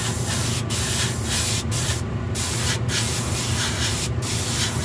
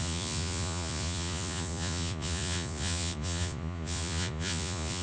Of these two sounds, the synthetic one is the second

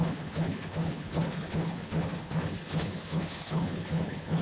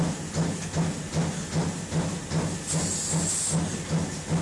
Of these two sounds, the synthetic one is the first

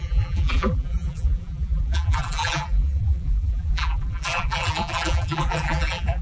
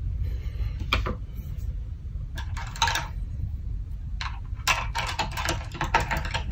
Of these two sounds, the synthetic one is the first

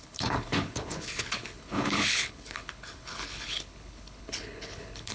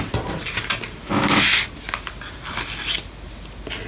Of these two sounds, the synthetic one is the first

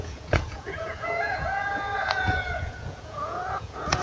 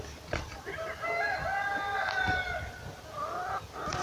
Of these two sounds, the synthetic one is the first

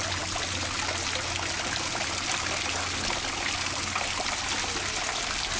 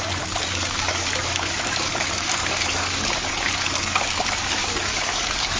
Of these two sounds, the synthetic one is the second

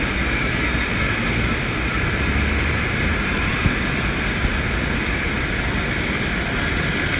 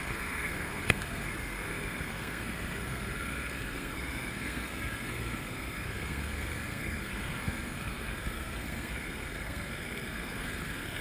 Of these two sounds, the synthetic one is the second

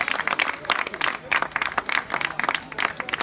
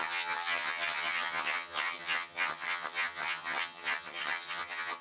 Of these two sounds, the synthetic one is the second